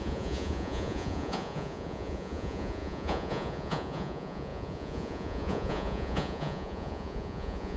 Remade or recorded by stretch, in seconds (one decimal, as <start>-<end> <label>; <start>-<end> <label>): 0.0-7.8 remade